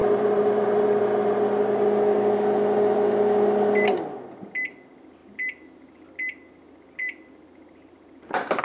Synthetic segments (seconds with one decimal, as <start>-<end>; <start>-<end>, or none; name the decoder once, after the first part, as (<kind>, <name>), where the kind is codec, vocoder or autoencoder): 0.0-1.0 (vocoder, BigVGAN v2); 5.2-8.6